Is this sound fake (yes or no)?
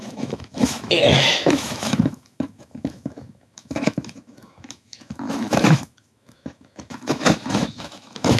yes